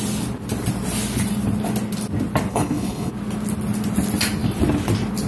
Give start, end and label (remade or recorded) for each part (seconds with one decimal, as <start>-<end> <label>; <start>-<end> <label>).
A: 0.0-2.5 recorded; 2.5-3.1 remade; 3.1-5.3 recorded